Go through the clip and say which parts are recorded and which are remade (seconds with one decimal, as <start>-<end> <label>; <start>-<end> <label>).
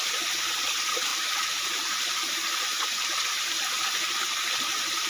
0.0-1.1 recorded; 1.1-3.4 remade; 3.4-5.1 recorded